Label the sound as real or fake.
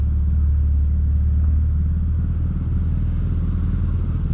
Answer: real